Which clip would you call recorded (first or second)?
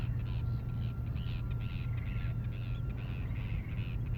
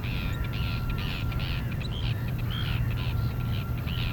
first